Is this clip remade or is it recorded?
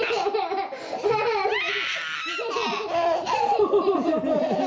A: recorded